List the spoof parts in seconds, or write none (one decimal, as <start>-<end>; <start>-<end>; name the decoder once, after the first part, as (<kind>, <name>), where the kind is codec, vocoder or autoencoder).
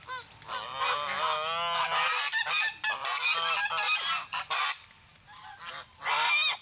none